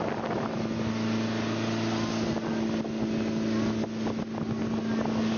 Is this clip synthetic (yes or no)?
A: no